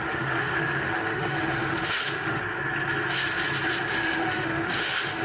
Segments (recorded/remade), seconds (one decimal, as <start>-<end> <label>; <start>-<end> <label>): 0.0-2.4 remade; 2.4-3.9 recorded; 3.9-5.2 remade